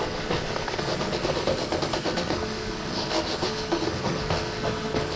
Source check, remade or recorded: remade